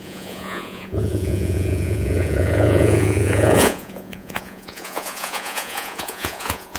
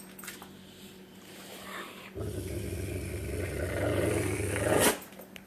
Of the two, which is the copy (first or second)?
first